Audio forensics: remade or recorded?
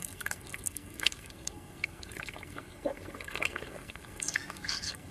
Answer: remade